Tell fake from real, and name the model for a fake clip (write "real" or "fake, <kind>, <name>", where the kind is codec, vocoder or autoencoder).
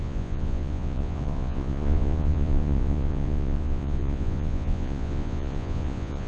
fake, vocoder, Vocos